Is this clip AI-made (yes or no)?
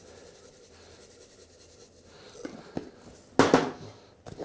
no